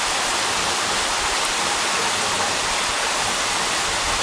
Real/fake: real